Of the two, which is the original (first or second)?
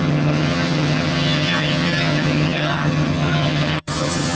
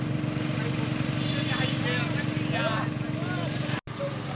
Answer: second